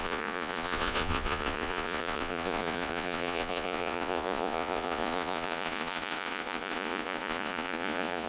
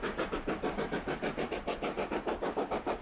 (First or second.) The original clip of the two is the second